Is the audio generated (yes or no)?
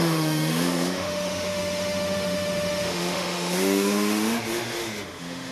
yes